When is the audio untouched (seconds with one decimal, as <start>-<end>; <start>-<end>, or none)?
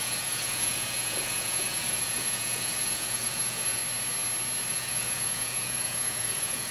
3.8-4.7